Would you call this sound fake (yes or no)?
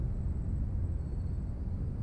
no